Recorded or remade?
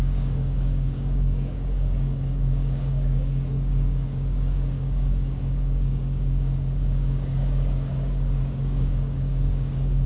remade